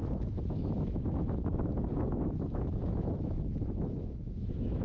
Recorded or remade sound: remade